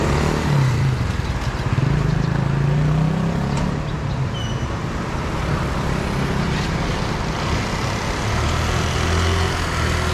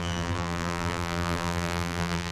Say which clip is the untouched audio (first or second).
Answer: first